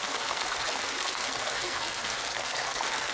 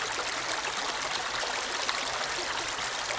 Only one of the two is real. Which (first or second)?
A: second